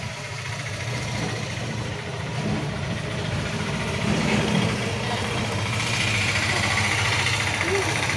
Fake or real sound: fake